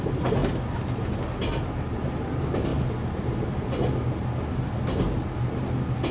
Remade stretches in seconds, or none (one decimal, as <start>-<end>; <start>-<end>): none